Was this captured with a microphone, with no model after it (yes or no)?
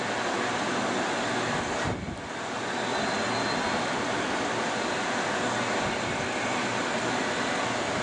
yes